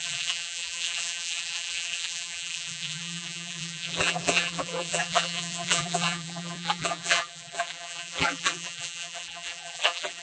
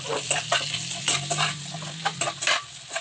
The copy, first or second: first